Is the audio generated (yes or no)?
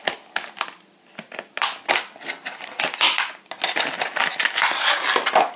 no